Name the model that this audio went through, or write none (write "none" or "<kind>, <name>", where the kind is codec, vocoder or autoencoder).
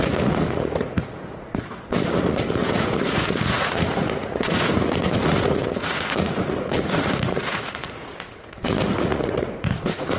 vocoder, Vocos